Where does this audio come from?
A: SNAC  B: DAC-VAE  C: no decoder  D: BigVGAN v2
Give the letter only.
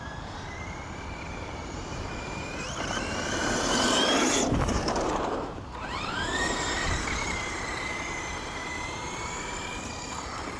D